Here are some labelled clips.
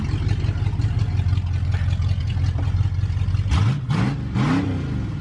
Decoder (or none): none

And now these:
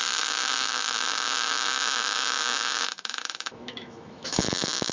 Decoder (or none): autoencoder, DAC-VAE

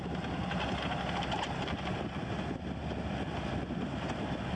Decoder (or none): none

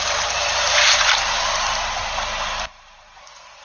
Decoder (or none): none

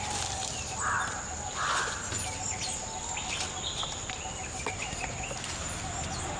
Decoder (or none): none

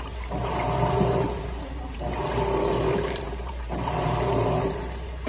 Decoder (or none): vocoder, BigVGAN v2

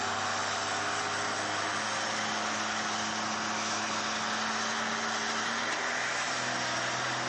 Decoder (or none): none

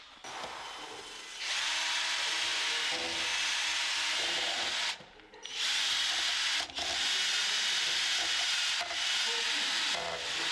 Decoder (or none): none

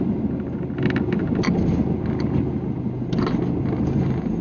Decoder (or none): none